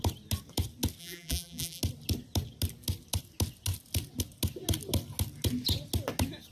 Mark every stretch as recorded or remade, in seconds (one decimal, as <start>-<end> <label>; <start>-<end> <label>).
0.0-1.0 recorded; 1.0-1.8 remade; 1.8-6.5 recorded